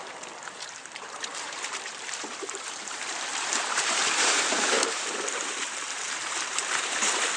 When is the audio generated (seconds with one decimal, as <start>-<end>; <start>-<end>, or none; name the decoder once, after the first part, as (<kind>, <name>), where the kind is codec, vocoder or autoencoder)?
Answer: 0.0-7.4 (vocoder, BigVGAN v2)